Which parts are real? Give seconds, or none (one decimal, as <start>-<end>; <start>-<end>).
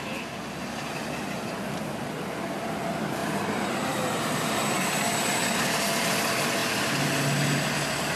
0.0-8.2